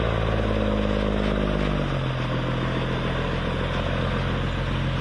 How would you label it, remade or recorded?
recorded